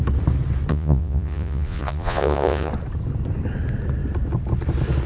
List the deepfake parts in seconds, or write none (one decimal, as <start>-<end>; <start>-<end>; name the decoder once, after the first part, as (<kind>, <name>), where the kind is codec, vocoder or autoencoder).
0.7-2.7 (vocoder, Vocos)